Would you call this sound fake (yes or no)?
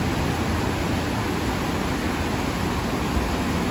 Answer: no